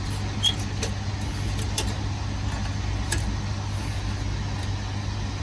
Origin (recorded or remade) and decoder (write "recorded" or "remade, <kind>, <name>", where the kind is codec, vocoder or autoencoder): recorded